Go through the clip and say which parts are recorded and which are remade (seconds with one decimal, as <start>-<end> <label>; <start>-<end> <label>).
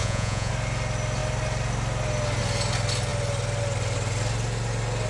0.0-0.5 remade; 0.5-5.1 recorded